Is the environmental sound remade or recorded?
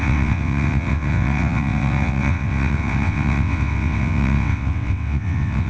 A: remade